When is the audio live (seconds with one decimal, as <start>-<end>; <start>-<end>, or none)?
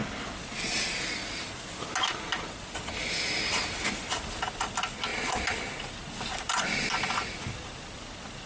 0.0-8.5